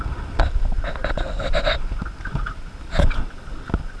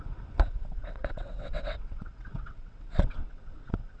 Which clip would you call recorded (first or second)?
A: first